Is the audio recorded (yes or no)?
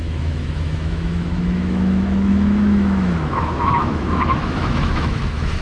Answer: no